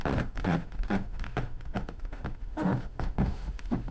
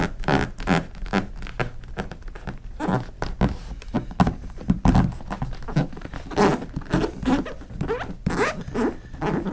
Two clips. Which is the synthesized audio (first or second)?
first